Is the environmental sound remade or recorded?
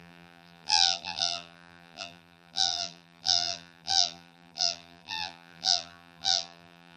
remade